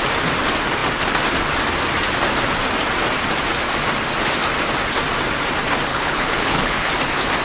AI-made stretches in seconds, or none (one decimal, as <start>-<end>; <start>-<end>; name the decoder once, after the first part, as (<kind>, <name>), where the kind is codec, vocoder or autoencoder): 5.9-6.9 (codec, HILCodec)